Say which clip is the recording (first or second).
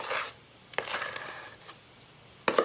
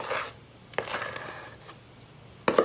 second